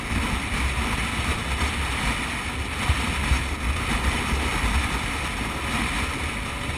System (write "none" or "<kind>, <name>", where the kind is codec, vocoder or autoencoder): none